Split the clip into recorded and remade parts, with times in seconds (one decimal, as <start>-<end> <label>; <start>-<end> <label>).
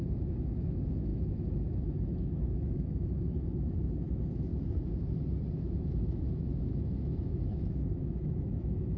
0.0-4.5 remade; 4.5-5.6 recorded; 5.6-9.0 remade